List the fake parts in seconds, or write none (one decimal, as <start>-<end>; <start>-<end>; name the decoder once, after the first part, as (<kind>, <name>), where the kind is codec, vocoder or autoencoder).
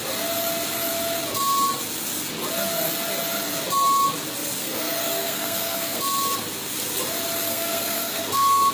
4.6-6.0 (codec, SNAC); 7.5-8.7